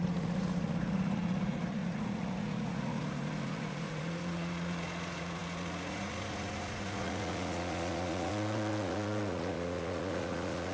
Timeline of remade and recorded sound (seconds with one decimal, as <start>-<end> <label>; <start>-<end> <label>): 0.0-10.7 remade